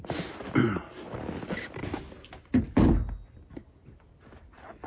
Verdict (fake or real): real